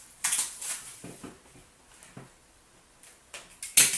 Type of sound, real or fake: real